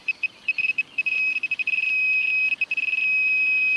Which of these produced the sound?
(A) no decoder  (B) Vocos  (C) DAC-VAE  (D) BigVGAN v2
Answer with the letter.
D